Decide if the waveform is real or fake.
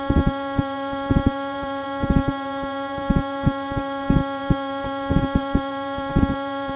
fake